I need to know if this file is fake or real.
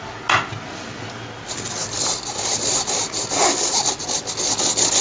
real